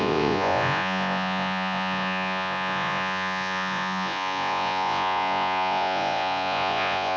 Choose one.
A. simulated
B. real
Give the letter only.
A